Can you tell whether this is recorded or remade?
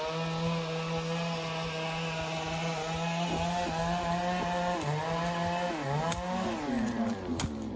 recorded